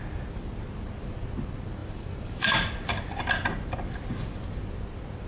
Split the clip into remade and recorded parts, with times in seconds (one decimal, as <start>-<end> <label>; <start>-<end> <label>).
0.0-1.8 recorded; 1.8-3.2 remade; 3.2-5.3 recorded